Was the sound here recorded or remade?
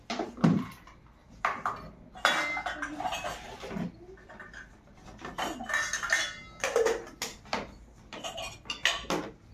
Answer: recorded